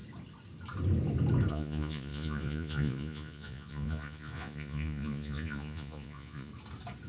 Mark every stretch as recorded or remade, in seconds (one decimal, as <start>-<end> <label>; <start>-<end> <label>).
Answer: 0.0-1.5 recorded; 1.5-6.5 remade; 6.5-7.1 recorded